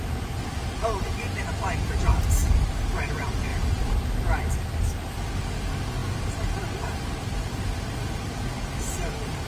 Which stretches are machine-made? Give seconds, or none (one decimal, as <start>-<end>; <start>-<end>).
2.4-3.1; 3.5-4.4